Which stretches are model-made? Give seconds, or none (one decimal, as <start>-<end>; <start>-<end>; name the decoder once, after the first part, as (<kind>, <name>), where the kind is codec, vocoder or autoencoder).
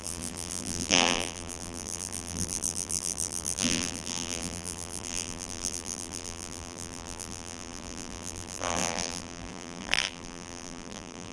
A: 0.0-11.3 (vocoder, BigVGAN v2)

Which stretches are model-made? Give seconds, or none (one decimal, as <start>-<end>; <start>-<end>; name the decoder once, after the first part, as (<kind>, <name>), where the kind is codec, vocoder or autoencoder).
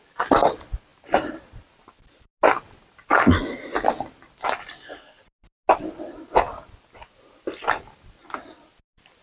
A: none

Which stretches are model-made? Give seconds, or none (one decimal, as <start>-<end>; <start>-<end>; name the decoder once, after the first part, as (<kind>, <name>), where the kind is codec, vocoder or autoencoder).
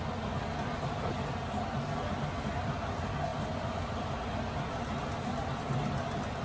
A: none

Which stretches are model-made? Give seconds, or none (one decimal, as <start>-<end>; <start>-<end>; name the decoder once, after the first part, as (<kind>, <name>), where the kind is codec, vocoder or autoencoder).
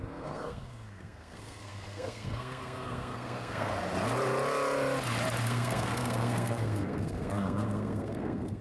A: 0.0-3.7 (codec, SNAC); 5.4-8.6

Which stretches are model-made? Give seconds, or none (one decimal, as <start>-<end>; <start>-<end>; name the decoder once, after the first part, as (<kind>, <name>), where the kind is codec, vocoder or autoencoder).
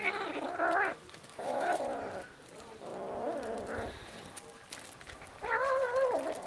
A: 0.9-1.8 (autoencoder, DAC-VAE)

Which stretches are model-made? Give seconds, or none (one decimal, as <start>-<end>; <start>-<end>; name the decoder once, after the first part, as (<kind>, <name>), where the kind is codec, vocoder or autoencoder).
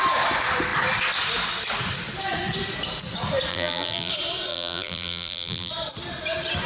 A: 3.5-4.1 (vocoder, BigVGAN v2); 4.5-5.7